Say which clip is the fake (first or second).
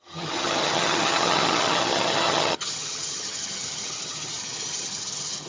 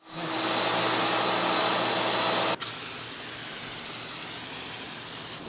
first